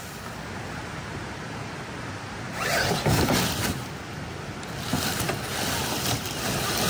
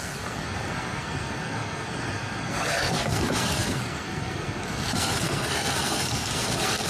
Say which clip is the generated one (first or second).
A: second